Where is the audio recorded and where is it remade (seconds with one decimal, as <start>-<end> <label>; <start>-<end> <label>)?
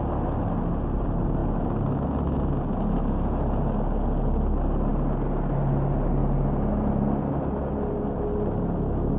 0.0-9.2 recorded